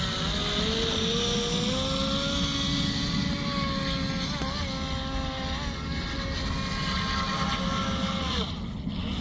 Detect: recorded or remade recorded